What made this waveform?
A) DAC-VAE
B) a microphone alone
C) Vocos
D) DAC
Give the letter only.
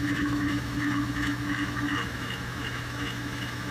A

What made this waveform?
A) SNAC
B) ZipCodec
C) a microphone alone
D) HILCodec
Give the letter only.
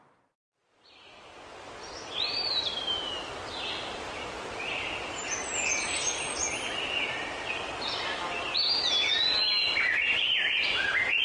C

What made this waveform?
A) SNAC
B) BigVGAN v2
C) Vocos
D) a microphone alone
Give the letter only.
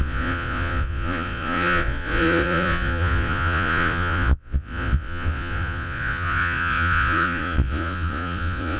C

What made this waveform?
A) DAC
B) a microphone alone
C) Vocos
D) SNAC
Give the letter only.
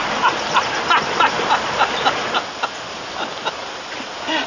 B